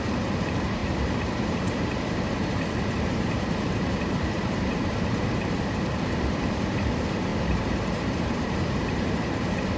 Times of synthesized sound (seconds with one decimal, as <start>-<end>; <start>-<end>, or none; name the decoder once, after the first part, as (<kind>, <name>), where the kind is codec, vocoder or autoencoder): 0.0-9.8 (vocoder, BigVGAN v2)